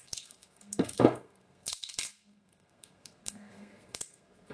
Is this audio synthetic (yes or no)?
yes